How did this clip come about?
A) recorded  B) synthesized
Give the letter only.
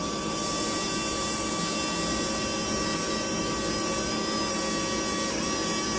A